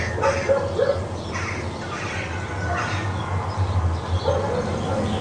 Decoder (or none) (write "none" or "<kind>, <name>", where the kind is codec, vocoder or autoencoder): none